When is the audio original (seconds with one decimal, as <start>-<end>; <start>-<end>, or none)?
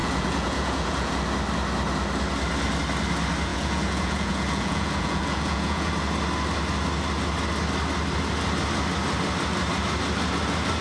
1.1-3.5; 5.9-10.8